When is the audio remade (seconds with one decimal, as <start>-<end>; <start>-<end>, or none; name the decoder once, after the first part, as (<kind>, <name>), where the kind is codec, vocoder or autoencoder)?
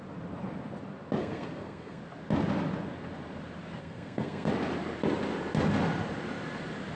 1.2-2.0 (codec, SNAC); 3.8-4.5